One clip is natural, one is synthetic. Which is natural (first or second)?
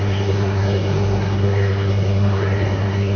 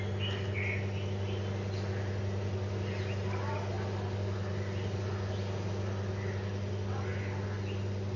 second